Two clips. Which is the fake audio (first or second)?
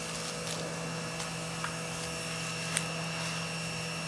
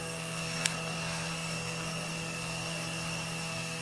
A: second